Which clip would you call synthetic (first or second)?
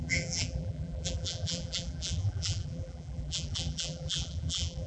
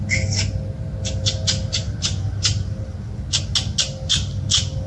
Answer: first